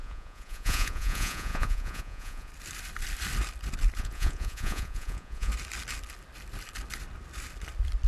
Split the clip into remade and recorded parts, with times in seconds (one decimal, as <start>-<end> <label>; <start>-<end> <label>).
0.0-2.5 remade; 2.5-4.0 recorded; 4.0-5.5 remade; 5.5-8.1 recorded